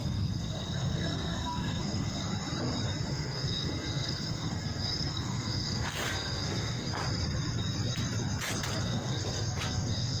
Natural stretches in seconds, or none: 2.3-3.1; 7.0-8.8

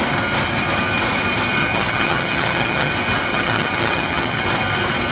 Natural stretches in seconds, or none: 0.0-1.6; 2.9-3.3; 4.4-5.1

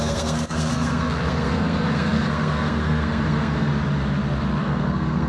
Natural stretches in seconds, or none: 3.7-4.6

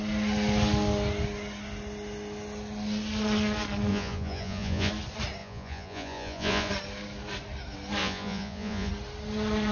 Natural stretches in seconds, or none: 0.0-3.9; 4.9-5.4; 6.7-8.0; 8.9-9.7

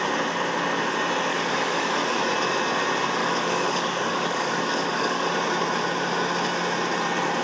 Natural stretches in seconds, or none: 0.0-1.3; 2.3-3.2; 5.3-7.4

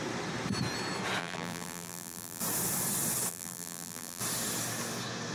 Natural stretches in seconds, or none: 0.0-1.2; 2.4-3.3; 4.2-5.3

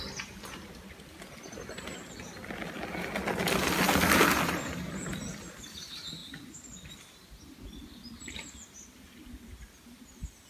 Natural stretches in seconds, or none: 0.0-10.5